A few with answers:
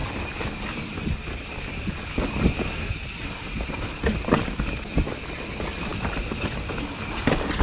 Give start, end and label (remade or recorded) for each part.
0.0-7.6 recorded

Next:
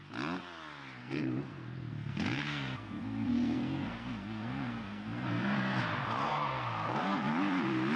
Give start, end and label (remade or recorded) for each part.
0.0-1.0 recorded; 1.0-5.8 remade; 5.8-6.2 recorded; 6.2-7.3 remade; 7.3-8.0 recorded

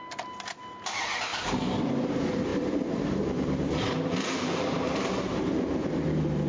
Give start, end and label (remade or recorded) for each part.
0.0-1.3 recorded; 1.3-1.8 remade; 1.8-2.5 recorded; 2.5-5.4 remade; 5.4-6.5 recorded

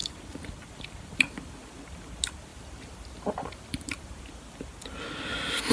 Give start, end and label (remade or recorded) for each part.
0.0-1.5 remade; 1.5-2.5 recorded; 2.5-4.2 remade; 4.2-5.7 recorded

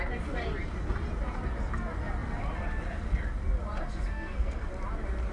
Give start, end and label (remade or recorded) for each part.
0.0-4.1 recorded; 4.1-4.7 remade; 4.7-5.3 recorded